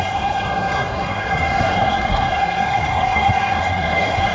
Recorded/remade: remade